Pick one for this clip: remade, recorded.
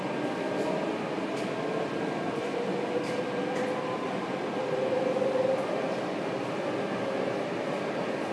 recorded